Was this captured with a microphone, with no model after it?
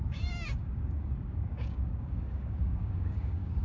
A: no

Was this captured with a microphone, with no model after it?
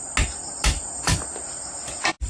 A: yes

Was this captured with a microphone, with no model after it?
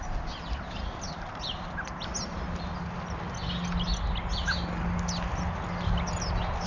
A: yes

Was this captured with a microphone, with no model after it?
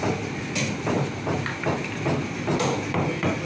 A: yes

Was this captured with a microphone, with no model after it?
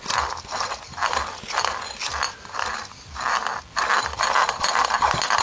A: yes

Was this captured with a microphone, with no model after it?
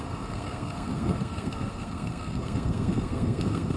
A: no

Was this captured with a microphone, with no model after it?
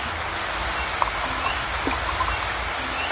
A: yes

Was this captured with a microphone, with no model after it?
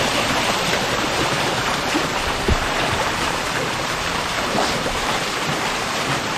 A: no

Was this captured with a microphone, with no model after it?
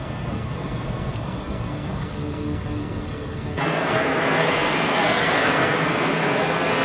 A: no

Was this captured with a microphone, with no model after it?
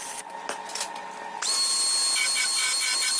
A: yes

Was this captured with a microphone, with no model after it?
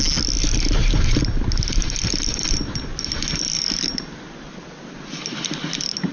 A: yes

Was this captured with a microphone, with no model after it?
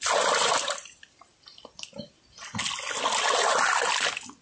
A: yes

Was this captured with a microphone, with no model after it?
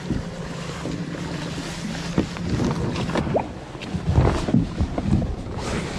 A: yes